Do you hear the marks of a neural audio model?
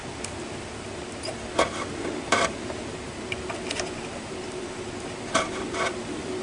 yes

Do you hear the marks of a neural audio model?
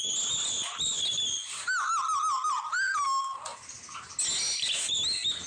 no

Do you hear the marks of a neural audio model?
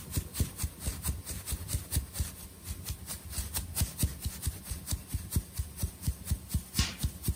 no